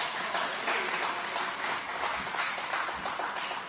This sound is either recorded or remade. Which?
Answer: recorded